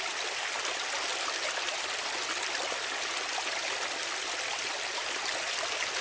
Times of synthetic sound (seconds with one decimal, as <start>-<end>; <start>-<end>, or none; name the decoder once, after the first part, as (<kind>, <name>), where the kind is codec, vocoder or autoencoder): none